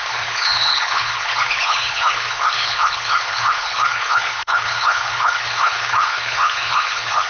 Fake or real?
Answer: fake